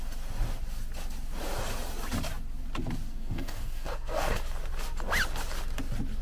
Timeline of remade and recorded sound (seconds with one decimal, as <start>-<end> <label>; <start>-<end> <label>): 0.0-3.1 recorded; 3.1-4.3 remade; 4.3-6.2 recorded